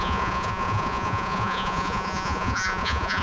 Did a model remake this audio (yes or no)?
yes